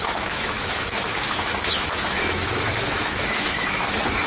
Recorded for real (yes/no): no